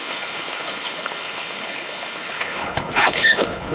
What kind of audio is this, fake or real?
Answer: fake